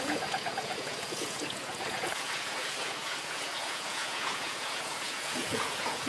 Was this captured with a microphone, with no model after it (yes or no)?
no